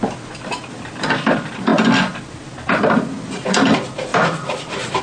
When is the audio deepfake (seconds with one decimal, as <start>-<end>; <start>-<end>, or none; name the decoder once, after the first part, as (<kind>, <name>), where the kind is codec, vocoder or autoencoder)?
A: 4.1-5.0 (vocoder, BigVGAN v2)